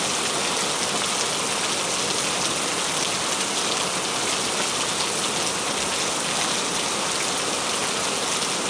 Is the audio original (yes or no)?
yes